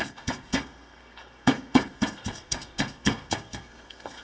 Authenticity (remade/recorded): remade